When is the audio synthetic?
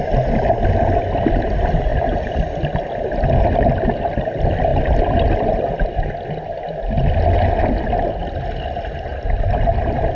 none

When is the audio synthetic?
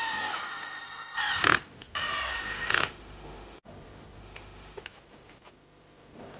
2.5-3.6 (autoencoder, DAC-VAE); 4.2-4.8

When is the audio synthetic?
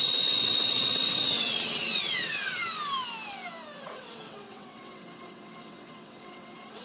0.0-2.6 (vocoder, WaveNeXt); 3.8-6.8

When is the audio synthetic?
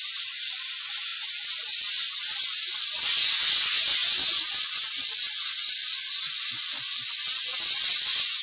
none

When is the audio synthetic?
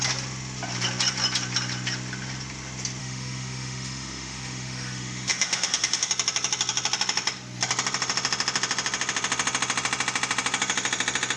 3.0-6.1 (autoencoder, DAC-VAE)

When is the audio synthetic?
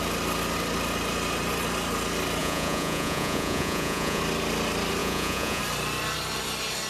2.4-4.2 (vocoder, Vocos); 5.0-5.6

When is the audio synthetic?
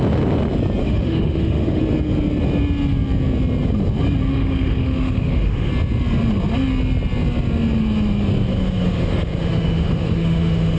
0.8-1.8 (autoencoder, DAC-VAE); 4.3-5.7; 8.5-10.8